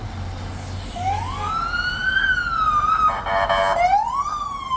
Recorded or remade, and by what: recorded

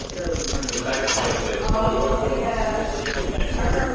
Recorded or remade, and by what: remade, vocoder, WaveNeXt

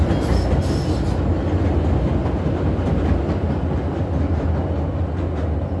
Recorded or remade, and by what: recorded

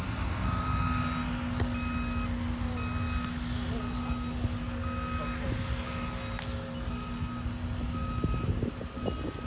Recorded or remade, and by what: recorded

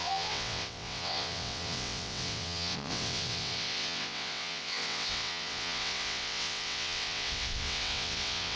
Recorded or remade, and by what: remade, vocoder, WaveNeXt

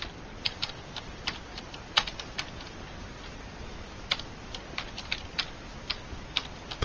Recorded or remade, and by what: recorded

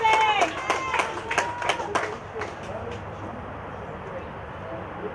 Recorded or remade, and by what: recorded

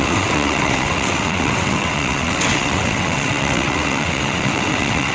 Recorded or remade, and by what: remade, vocoder, WaveNeXt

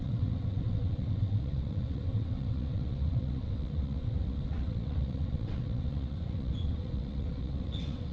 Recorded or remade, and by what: remade, vocoder, WaveNeXt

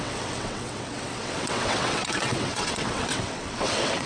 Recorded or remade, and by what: remade, vocoder, WaveNeXt